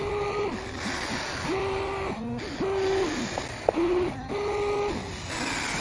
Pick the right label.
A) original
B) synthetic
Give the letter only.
A